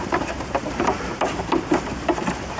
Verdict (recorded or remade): remade